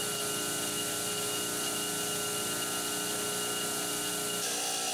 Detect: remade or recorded recorded